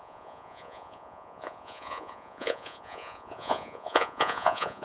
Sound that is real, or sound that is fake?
fake